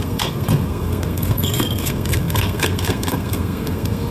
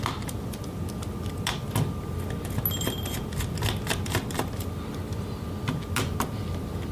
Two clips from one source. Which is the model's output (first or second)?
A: first